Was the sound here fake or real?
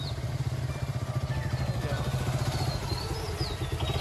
real